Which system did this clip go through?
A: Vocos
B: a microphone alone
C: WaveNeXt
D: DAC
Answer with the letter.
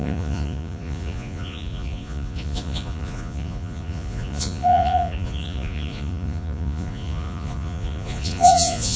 A